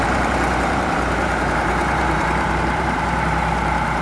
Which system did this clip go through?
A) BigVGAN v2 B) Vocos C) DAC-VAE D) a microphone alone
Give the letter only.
A